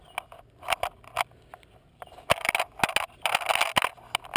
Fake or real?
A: real